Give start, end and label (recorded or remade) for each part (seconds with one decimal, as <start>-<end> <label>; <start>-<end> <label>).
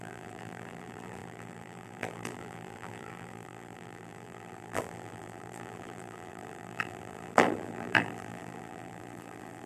0.0-9.7 remade